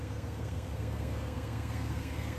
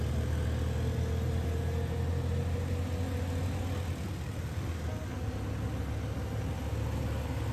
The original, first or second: second